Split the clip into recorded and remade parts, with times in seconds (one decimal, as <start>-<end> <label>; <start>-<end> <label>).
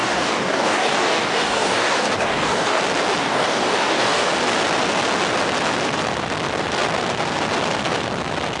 0.0-2.8 remade; 2.8-3.2 recorded; 3.2-4.3 remade; 4.3-8.6 recorded